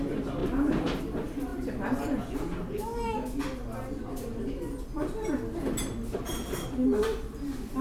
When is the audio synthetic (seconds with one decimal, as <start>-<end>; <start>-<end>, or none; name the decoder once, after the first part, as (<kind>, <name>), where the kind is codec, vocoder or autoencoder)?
none